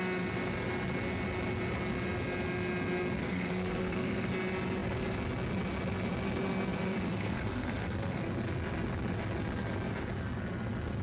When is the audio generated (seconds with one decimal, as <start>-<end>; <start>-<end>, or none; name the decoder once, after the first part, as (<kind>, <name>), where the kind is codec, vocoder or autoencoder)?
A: 3.2-4.3 (codec, SNAC); 7.1-8.2